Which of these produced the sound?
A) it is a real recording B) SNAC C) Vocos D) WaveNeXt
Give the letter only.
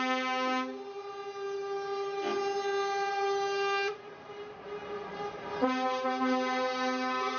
A